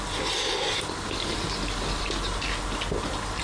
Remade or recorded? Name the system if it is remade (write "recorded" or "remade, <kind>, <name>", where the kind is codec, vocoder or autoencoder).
recorded